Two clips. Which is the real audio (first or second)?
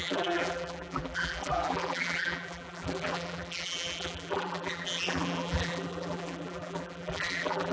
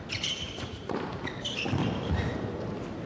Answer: second